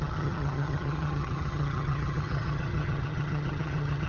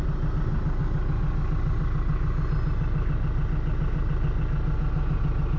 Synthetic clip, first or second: first